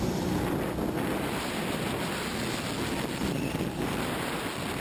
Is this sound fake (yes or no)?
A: no